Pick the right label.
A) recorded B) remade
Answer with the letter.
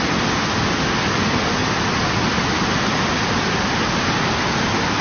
A